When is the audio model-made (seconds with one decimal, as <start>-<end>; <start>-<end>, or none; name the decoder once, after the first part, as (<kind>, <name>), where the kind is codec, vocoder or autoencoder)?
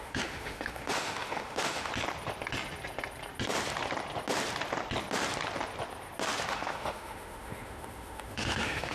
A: 0.0-1.9 (autoencoder, DAC-VAE); 6.5-8.9